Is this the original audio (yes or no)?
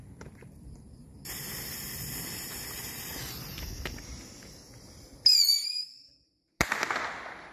yes